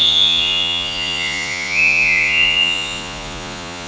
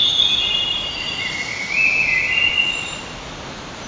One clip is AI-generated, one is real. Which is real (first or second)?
second